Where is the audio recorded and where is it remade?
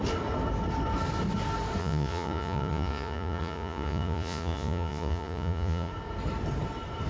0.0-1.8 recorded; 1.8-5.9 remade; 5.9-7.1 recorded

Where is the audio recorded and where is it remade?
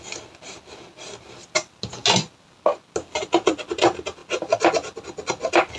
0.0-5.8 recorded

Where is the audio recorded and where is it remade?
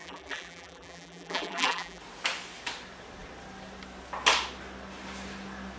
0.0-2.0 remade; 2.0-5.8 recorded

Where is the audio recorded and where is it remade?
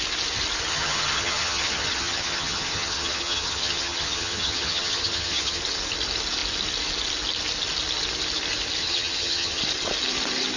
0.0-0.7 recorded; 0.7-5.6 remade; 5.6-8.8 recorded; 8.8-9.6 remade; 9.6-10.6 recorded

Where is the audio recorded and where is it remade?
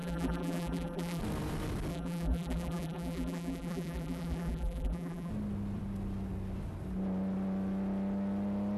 0.0-1.2 remade; 1.2-1.9 recorded; 1.9-5.3 remade; 5.3-8.8 recorded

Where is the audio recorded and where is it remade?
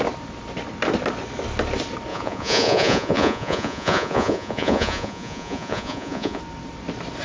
0.0-2.1 recorded; 2.1-6.4 remade; 6.4-7.2 recorded